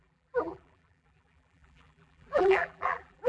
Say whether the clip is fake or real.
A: fake